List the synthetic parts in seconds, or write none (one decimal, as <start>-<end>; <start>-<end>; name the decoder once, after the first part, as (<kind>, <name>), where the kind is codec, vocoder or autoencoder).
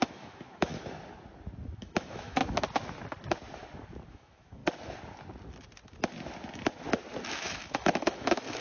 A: 0.0-0.8 (autoencoder, DAC-VAE); 1.8-2.4; 4.1-4.6; 7.3-8.6